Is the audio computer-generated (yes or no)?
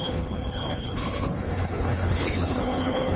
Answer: yes